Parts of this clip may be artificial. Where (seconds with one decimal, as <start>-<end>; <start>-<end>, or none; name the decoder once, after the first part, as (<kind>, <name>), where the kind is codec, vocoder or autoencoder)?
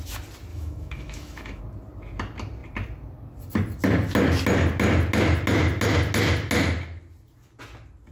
0.5-1.6 (autoencoder, DAC-VAE)